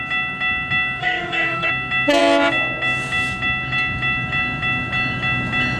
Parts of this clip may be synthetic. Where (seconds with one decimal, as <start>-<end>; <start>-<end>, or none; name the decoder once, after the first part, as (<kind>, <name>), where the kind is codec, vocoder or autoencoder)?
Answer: 1.0-1.7 (autoencoder, DAC-VAE)